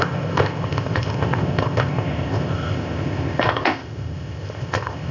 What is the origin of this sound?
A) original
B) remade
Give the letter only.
B